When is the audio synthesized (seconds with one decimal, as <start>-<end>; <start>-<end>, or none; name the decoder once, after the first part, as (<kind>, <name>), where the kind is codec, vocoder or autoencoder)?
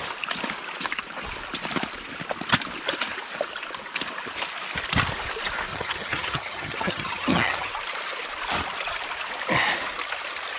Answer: 5.7-7.7 (vocoder, HiFi-GAN)